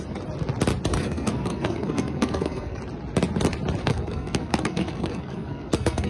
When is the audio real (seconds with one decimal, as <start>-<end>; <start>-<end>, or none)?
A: 0.0-0.9; 2.8-3.8